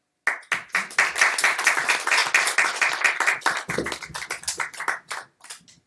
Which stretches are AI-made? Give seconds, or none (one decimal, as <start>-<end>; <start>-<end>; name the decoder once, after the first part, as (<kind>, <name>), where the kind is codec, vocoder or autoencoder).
none